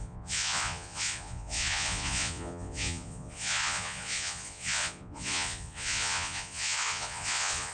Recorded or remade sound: remade